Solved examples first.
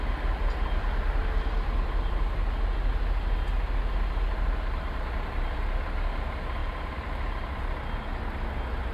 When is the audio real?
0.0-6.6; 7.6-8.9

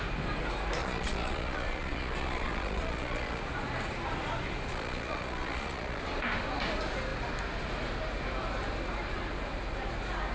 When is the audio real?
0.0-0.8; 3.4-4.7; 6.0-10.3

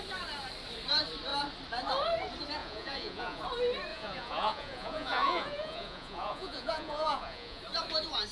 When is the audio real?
0.0-2.6; 3.4-3.9; 7.6-8.3